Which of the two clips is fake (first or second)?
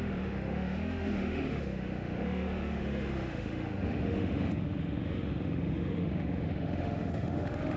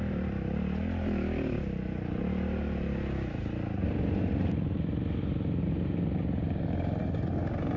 first